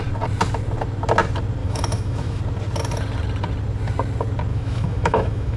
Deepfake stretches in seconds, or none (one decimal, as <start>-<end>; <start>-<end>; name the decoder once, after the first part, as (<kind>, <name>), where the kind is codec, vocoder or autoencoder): 1.6-2.4 (autoencoder, DAC-VAE); 4.5-5.6